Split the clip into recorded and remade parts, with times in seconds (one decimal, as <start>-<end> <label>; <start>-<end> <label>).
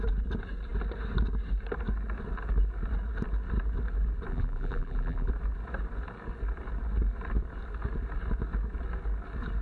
0.0-4.3 recorded; 4.3-5.3 remade; 5.3-9.6 recorded